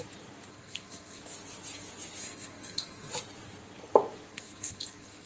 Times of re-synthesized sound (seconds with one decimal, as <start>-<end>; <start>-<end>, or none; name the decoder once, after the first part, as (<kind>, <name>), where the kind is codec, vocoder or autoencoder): 0.5-1.2 (codec, SNAC); 2.2-3.1; 4.3-5.3